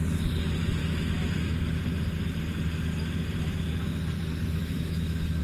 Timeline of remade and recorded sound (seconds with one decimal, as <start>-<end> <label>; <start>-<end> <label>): 0.0-0.8 recorded; 0.8-1.6 remade; 1.6-4.6 recorded; 4.6-5.4 remade